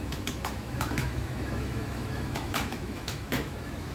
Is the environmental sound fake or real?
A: fake